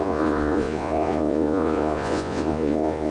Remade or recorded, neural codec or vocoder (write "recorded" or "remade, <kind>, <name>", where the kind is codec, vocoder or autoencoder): remade, vocoder, Vocos